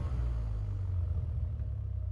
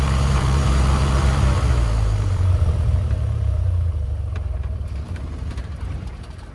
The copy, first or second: second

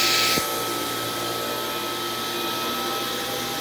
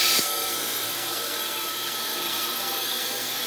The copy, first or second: second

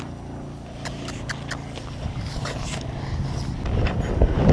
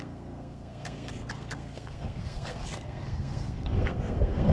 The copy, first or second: second